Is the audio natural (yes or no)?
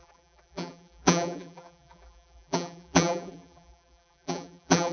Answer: no